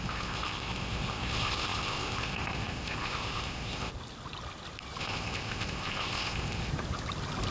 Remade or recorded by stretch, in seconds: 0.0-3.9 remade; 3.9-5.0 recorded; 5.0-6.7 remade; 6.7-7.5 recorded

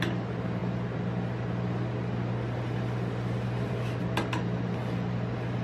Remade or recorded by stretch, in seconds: 0.0-5.6 recorded